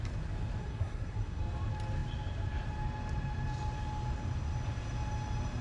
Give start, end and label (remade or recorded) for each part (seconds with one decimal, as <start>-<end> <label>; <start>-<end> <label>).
0.0-0.6 recorded; 0.6-1.4 remade; 1.4-5.6 recorded